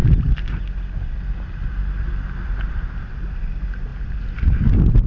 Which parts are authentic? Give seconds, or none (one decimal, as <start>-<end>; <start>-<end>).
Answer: 0.0-5.1